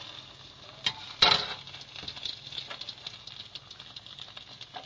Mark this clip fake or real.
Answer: real